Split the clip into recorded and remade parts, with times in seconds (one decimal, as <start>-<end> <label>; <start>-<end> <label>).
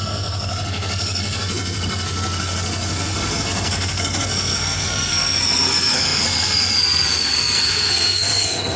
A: 0.0-8.8 remade